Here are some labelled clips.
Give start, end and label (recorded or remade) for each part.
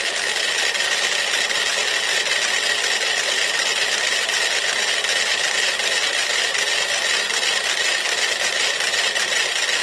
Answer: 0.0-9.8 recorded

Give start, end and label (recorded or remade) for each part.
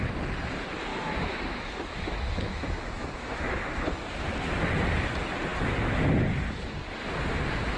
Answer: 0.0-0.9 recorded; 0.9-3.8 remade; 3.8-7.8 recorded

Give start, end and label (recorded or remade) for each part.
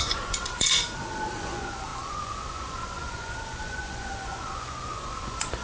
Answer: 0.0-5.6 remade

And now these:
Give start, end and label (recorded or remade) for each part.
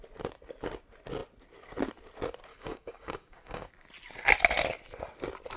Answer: 0.0-2.5 recorded; 2.5-3.7 remade; 3.7-5.6 recorded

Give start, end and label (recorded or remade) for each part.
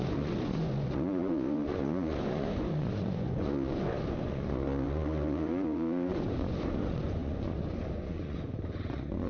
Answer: 0.0-9.3 remade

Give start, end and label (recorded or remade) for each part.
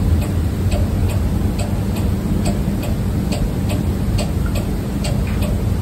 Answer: 0.0-5.8 recorded